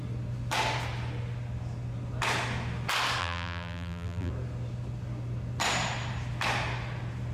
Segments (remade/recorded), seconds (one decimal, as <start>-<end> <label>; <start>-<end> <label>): 0.0-3.2 recorded; 3.2-4.3 remade; 4.3-7.3 recorded